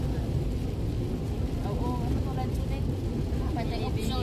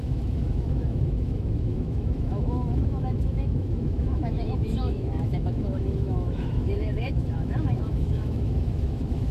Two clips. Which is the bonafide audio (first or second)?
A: first